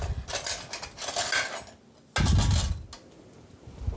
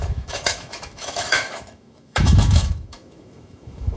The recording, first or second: first